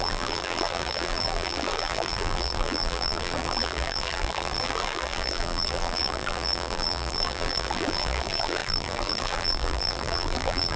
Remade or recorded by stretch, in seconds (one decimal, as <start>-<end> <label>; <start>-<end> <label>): 0.0-10.8 remade